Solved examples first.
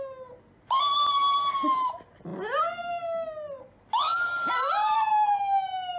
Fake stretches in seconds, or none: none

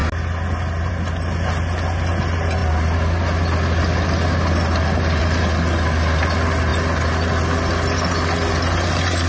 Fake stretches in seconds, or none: none

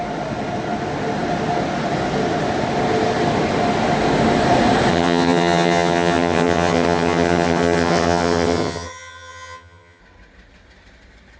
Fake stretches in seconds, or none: 4.9-10.0 (vocoder, HiFi-GAN)

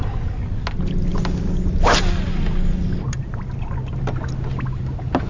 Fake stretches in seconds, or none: none